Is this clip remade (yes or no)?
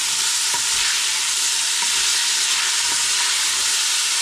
no